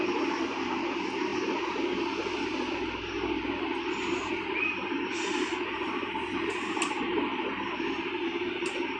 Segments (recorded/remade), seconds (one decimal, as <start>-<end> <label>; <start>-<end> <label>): 0.0-9.0 recorded